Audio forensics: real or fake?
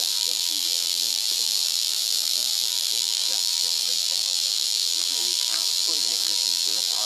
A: fake